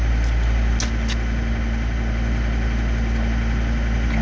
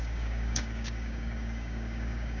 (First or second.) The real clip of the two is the first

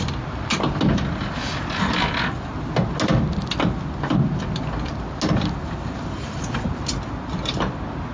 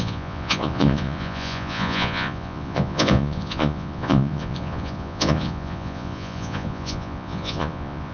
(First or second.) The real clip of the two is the first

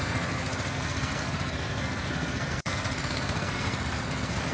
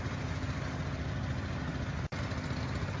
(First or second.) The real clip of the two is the second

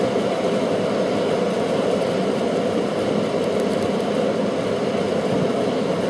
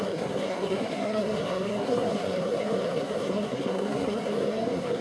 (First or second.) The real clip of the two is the first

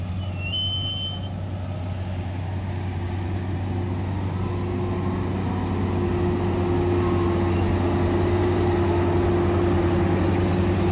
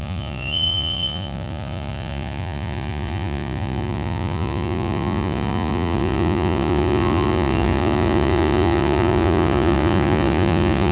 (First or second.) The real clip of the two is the first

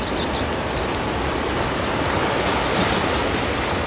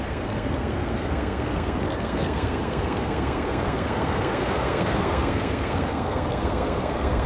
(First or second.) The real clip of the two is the first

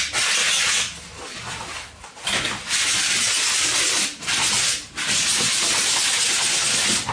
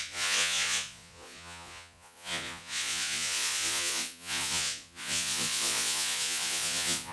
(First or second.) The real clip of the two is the first